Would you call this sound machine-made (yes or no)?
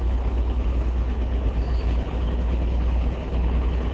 yes